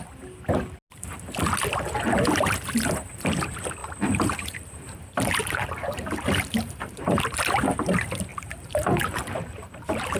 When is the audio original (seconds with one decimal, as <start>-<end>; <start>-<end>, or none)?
0.0-3.8; 7.2-8.3